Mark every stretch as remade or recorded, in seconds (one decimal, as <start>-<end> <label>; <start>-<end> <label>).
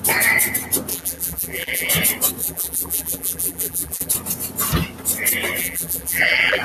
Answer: 0.0-0.9 recorded; 0.9-1.9 remade; 1.9-2.4 recorded; 2.4-4.1 remade; 4.1-5.6 recorded; 5.6-6.6 remade